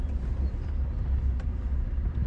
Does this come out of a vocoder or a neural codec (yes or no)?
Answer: no